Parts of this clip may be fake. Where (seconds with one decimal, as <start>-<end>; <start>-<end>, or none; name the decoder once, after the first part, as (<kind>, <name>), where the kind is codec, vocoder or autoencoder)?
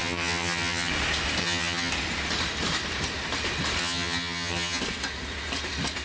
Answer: 0.0-0.9 (vocoder, HiFi-GAN); 1.4-1.9; 3.8-4.8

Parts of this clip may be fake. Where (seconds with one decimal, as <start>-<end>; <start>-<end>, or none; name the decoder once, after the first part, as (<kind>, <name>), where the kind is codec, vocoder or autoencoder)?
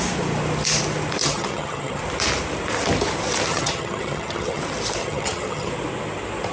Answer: 1.2-2.0 (vocoder, HiFi-GAN); 3.5-4.6; 5.0-5.7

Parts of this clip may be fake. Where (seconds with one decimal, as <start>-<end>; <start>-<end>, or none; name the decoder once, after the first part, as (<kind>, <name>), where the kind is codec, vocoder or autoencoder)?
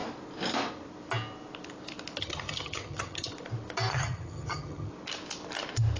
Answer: 2.2-3.3 (vocoder, HiFi-GAN); 3.9-4.9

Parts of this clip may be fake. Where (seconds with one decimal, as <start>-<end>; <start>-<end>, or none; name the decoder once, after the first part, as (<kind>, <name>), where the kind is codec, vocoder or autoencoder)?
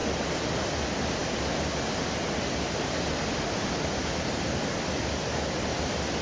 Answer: none